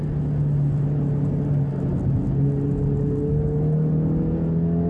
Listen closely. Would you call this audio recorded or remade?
recorded